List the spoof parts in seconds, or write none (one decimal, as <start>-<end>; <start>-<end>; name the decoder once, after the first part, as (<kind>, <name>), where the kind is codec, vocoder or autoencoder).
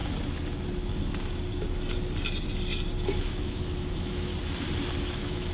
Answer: 3.3-4.3 (autoencoder, DAC-VAE); 5.1-5.5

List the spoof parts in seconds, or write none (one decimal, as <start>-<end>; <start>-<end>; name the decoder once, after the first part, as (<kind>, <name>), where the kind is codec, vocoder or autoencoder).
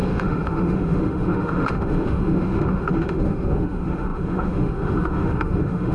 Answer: 0.0-5.9 (autoencoder, DAC-VAE)